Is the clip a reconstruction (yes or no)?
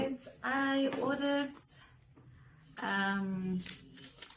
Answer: no